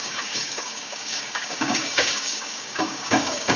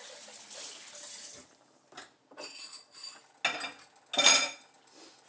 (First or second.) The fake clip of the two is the first